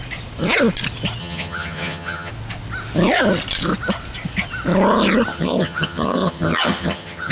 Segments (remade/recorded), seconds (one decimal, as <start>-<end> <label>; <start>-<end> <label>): 0.0-1.2 recorded; 1.2-2.3 remade; 2.3-5.3 recorded; 5.3-7.3 remade